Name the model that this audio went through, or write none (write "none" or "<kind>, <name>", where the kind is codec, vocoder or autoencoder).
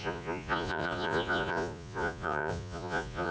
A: vocoder, Vocos